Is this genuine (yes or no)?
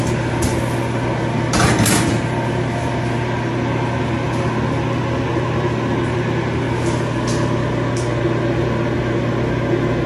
yes